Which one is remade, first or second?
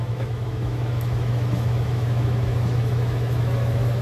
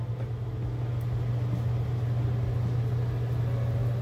first